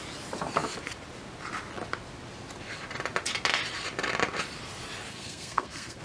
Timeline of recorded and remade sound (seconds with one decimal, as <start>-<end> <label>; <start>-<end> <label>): 0.0-5.1 recorded; 5.1-6.0 remade